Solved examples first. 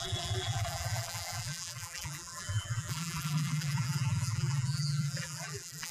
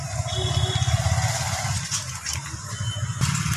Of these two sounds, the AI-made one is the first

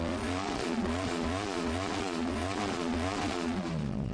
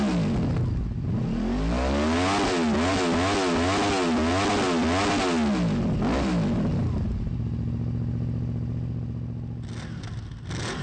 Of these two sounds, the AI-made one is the first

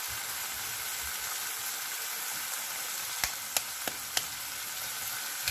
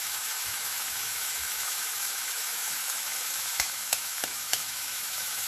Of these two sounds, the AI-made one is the second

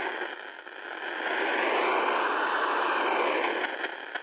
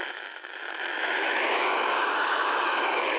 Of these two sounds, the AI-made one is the second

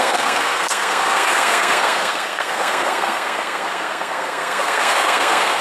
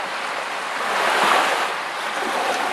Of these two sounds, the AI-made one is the first